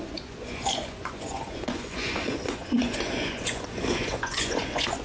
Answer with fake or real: fake